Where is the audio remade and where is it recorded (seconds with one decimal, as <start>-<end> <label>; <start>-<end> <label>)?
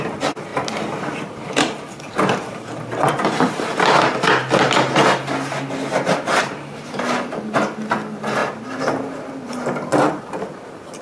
0.0-11.0 recorded